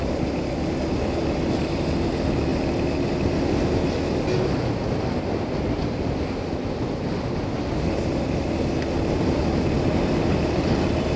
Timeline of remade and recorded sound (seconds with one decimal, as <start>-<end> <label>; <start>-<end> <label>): 0.0-11.2 recorded